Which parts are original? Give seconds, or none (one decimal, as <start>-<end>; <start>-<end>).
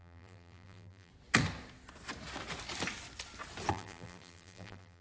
1.1-3.7